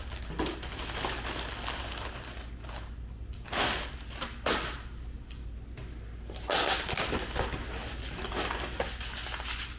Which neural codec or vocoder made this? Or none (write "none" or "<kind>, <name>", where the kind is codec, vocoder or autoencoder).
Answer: none